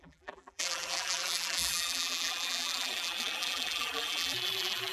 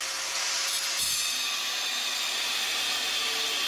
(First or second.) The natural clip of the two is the second